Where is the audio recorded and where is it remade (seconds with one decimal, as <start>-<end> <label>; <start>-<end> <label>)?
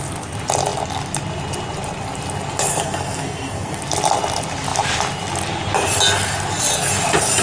0.0-2.7 recorded; 2.7-3.8 remade; 3.8-7.4 recorded